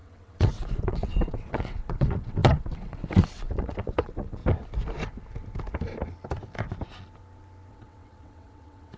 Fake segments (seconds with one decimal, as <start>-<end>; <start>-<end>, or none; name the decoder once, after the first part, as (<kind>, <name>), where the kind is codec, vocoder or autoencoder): 0.0-4.4 (vocoder, WaveNeXt); 7.7-9.0